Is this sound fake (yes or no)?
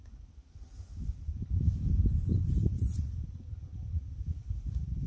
yes